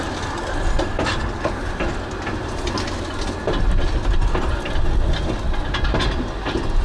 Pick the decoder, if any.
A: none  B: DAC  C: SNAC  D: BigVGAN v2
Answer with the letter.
A